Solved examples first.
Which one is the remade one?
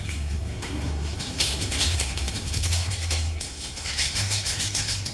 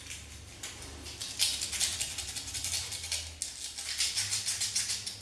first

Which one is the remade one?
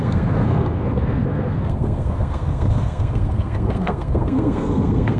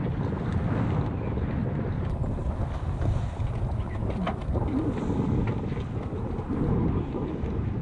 first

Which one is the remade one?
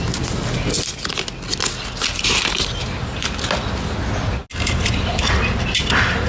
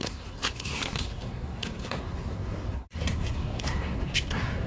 second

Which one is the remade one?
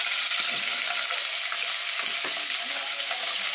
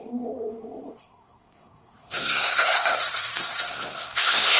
second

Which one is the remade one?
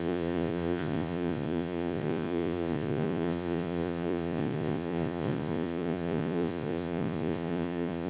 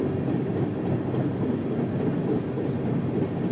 first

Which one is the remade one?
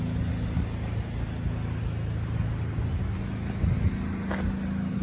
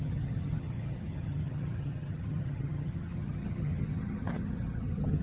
second